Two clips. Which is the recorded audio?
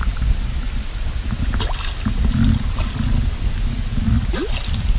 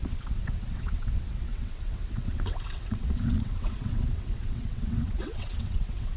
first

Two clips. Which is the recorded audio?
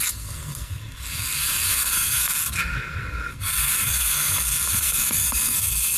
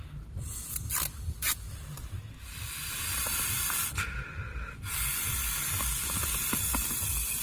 second